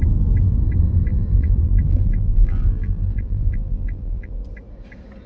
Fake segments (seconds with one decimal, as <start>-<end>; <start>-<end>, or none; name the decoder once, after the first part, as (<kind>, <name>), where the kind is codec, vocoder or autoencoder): 1.1-4.3 (vocoder, BigVGAN v2)